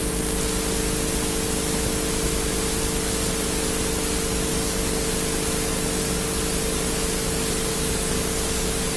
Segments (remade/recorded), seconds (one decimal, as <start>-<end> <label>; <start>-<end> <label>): 0.0-4.5 recorded; 4.5-5.1 remade; 5.1-5.9 recorded; 5.9-6.4 remade; 6.4-7.7 recorded; 7.7-9.0 remade